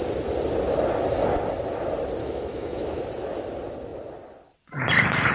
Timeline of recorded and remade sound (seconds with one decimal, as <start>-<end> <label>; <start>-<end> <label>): 0.0-2.2 recorded; 2.2-3.0 remade; 3.0-5.3 recorded